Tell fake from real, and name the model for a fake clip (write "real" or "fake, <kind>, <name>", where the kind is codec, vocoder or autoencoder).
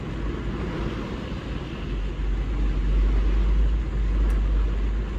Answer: real